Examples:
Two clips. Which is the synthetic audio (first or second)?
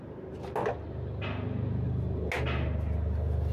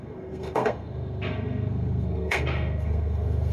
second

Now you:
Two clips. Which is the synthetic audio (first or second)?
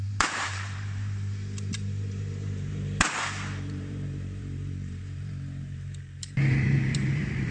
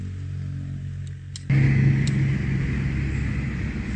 first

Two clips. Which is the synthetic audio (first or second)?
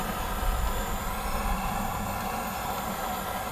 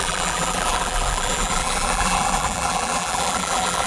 second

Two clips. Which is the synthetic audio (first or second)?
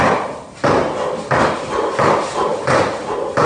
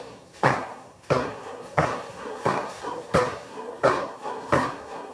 second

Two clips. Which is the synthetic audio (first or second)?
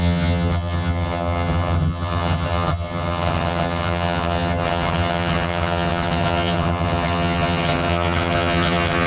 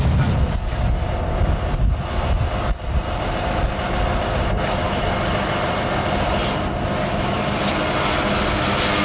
first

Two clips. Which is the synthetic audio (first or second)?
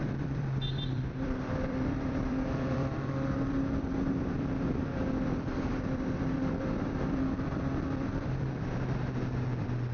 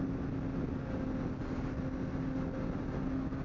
first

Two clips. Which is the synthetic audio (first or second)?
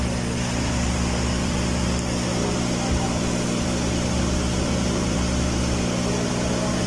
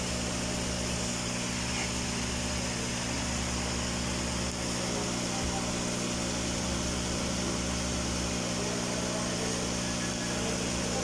first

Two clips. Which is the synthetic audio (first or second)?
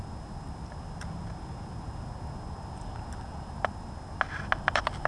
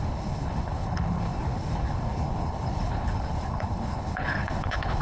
second